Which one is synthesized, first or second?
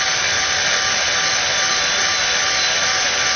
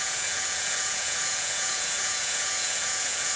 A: second